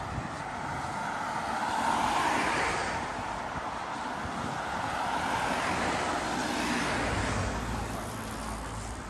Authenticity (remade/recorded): recorded